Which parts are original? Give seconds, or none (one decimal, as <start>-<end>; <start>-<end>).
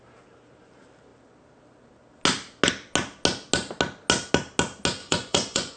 0.0-5.0